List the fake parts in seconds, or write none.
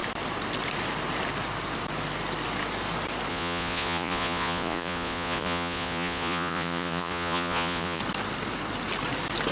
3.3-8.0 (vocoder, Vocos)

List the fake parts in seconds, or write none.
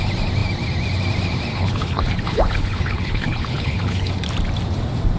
1.5-4.1 (codec, HILCodec)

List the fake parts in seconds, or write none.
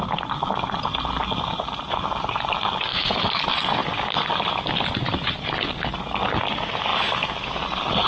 2.9-3.4 (autoencoder, DAC-VAE)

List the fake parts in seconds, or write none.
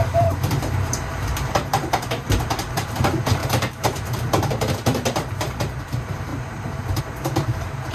0.0-3.4 (vocoder, BigVGAN v2); 4.7-6.3; 7.0-7.9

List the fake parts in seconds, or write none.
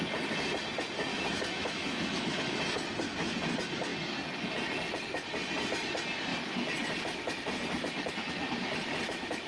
1.1-2.6 (autoencoder, DAC-VAE)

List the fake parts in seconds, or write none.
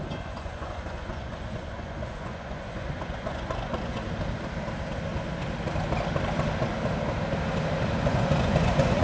0.0-4.0 (vocoder, Vocos); 8.0-9.0